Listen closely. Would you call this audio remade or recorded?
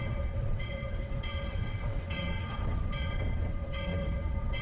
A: remade